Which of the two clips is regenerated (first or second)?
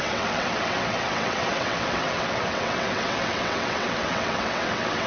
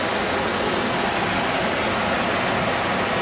first